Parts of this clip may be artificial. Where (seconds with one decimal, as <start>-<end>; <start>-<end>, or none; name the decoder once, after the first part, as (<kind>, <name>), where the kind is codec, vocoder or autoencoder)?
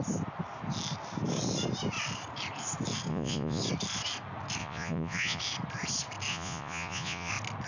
3.1-3.6 (vocoder, Vocos); 4.6-5.4; 6.3-7.3